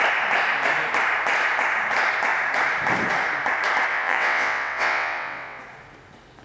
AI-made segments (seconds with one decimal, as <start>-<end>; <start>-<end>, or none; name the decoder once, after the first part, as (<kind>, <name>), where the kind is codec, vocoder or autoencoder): 3.9-5.6 (vocoder, WaveNeXt)

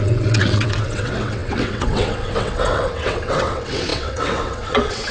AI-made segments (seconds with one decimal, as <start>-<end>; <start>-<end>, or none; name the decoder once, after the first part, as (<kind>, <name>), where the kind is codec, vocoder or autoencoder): 0.0-5.1 (vocoder, WaveNeXt)

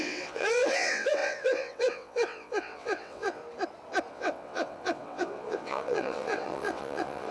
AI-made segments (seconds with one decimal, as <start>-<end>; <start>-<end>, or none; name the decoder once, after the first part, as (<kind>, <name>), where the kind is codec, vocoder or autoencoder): 0.0-3.4 (vocoder, WaveNeXt); 4.1-7.3

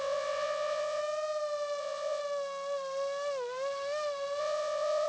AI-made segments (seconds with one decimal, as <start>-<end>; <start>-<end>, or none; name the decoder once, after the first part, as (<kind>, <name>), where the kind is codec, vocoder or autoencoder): 0.0-1.0 (vocoder, WaveNeXt); 1.8-2.2; 4.4-5.1

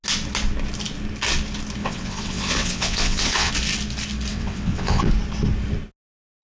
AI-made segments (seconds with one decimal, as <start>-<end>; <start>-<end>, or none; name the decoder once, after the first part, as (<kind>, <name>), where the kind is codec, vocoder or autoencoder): 1.8-3.5 (vocoder, WaveNeXt); 4.3-5.1

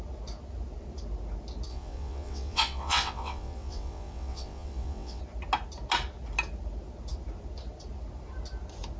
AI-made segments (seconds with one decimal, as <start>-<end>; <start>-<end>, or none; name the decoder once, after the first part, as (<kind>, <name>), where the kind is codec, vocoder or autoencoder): 1.7-5.2 (vocoder, WaveNeXt)